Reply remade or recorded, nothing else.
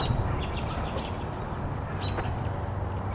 recorded